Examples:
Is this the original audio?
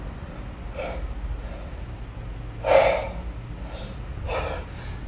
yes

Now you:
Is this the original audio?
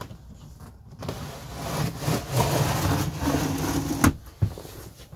yes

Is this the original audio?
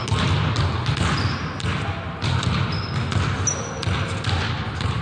yes